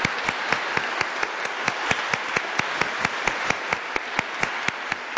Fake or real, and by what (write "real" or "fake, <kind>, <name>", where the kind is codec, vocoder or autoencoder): real